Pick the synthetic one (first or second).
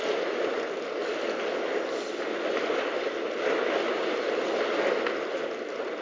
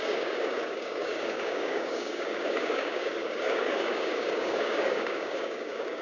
second